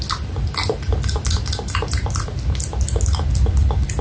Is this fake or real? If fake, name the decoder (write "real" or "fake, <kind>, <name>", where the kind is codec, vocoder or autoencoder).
real